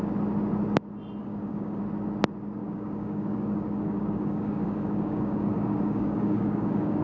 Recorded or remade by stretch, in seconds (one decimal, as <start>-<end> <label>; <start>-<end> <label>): 0.0-1.2 recorded; 1.2-1.8 remade; 1.8-2.6 recorded; 2.6-7.0 remade